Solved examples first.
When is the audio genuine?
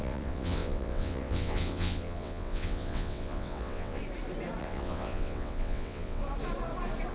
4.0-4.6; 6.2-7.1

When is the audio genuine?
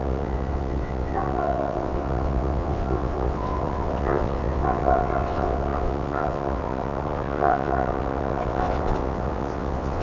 none